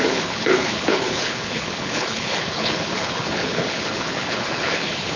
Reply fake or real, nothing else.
fake